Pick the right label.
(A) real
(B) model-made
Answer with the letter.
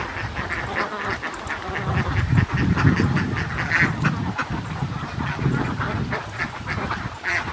A